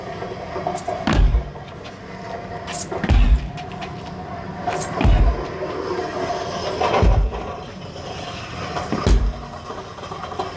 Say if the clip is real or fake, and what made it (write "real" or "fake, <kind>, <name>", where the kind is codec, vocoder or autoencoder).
real